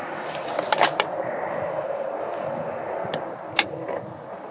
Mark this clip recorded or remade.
recorded